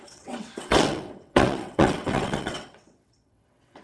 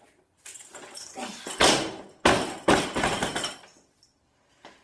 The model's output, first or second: first